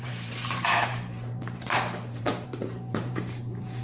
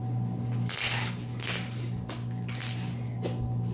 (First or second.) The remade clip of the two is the first